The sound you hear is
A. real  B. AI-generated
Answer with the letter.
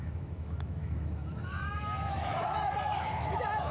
B